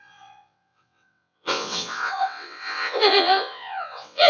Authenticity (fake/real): fake